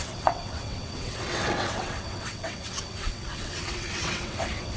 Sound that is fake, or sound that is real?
fake